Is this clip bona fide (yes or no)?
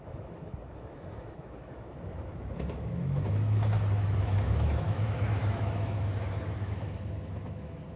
no